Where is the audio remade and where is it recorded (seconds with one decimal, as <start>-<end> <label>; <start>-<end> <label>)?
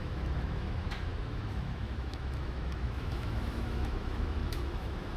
0.0-5.2 remade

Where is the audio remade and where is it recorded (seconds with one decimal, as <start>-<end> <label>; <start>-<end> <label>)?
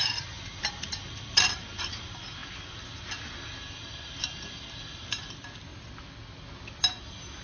0.0-7.4 recorded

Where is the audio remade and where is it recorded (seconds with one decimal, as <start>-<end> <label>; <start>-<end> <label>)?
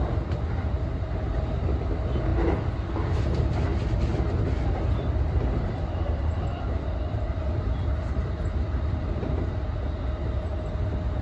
0.0-2.3 recorded; 2.3-2.9 remade; 2.9-4.1 recorded; 4.1-6.6 remade; 6.6-11.2 recorded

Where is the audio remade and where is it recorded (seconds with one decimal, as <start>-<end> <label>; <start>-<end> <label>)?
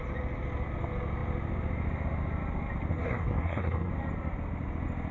0.0-2.9 recorded; 2.9-3.9 remade; 3.9-5.1 recorded